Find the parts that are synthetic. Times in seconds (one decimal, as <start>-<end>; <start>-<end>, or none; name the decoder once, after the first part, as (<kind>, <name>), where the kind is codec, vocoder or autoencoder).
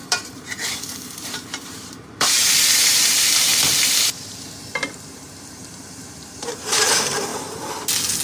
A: 0.0-3.5 (vocoder, BigVGAN v2); 4.9-7.3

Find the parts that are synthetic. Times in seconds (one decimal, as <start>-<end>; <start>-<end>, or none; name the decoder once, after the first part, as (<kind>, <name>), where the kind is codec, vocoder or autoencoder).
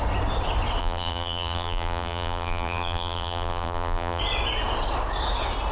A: 0.8-4.2 (vocoder, BigVGAN v2)